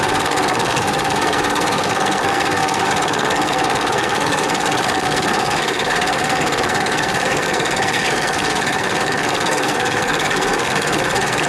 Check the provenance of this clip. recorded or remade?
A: remade